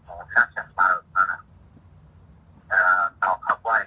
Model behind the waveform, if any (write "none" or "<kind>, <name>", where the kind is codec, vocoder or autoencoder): none